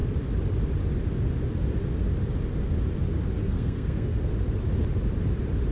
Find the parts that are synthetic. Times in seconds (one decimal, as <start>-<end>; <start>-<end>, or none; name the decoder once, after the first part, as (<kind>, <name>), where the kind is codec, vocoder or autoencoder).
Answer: 3.4-4.3 (codec, SNAC)